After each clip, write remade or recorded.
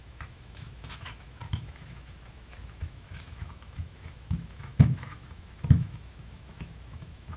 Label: remade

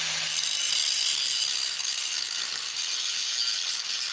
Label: recorded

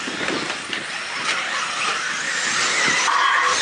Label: recorded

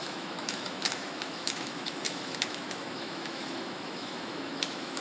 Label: remade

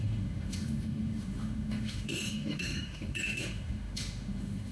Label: remade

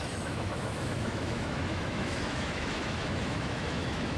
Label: remade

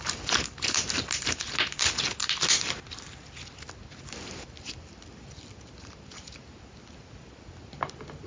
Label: recorded